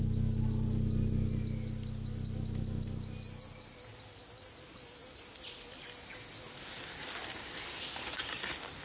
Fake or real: real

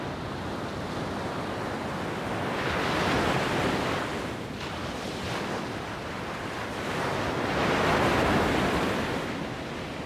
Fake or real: real